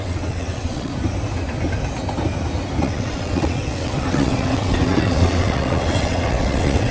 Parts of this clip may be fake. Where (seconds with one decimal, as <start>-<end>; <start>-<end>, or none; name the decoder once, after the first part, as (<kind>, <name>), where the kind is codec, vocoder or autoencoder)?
0.0-0.9 (vocoder, WaveNeXt); 2.8-6.9